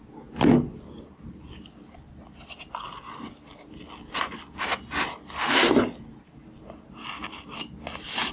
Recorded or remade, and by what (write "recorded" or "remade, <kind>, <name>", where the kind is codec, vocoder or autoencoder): recorded